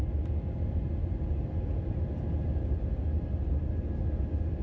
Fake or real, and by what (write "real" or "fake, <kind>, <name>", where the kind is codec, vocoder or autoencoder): real